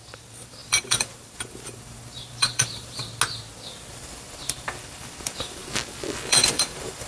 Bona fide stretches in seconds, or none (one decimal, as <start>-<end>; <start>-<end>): 3.0-3.9